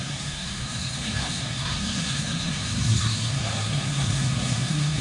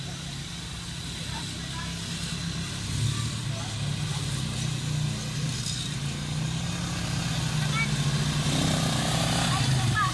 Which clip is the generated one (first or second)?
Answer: first